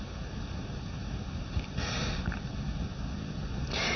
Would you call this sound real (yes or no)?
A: yes